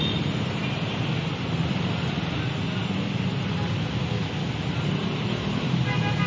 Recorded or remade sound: recorded